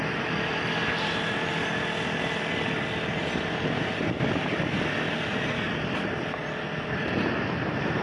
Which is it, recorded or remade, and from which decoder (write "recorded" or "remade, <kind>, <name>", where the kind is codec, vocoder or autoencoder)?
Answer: recorded